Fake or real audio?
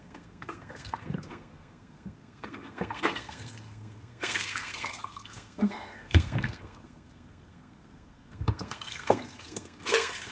fake